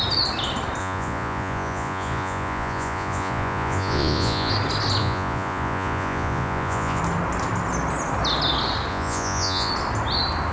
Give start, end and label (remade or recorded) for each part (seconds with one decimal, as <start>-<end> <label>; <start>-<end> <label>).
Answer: 0.0-0.8 recorded; 0.8-4.5 remade; 4.5-5.0 recorded; 5.0-7.0 remade; 7.0-8.9 recorded; 8.9-9.7 remade; 9.7-10.5 recorded